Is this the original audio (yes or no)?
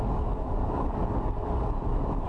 no